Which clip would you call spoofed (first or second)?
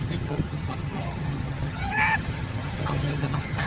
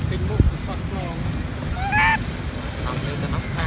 first